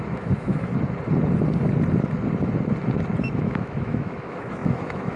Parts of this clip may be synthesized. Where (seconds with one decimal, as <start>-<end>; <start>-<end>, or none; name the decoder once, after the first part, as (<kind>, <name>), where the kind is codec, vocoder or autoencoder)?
0.0-0.7 (autoencoder, DAC-VAE); 3.2-5.2

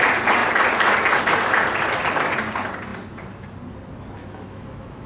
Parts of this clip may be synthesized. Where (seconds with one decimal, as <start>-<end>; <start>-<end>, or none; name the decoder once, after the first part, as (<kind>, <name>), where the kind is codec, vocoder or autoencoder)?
4.2-5.1 (autoencoder, DAC-VAE)

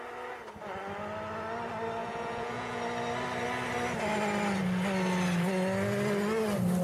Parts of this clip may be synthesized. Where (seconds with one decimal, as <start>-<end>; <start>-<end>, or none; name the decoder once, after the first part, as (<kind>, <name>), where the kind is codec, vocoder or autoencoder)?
2.0-2.8 (vocoder, Vocos)

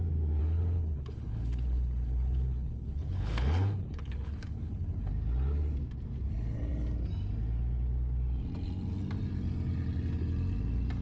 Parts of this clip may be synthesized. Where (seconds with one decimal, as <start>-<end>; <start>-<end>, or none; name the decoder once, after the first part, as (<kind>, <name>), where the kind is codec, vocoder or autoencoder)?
0.4-5.1 (codec, HILCodec)